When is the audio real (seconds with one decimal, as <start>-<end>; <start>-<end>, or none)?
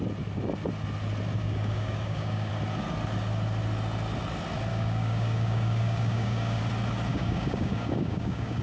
0.0-1.4; 2.5-4.7; 6.6-7.1